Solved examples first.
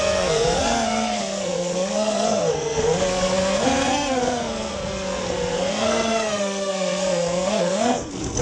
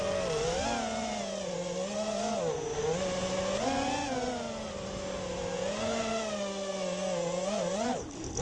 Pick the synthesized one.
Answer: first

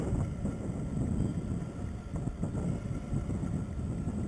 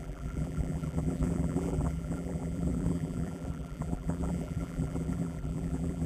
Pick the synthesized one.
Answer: second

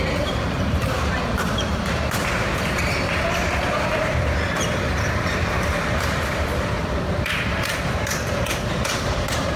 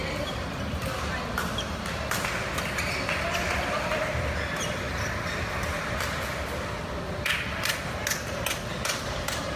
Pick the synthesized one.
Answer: first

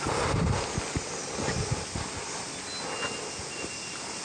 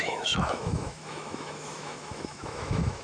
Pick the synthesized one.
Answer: second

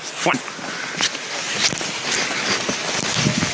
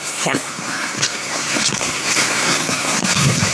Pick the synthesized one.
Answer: second